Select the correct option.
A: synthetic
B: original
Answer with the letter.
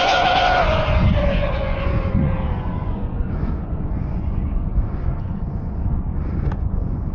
A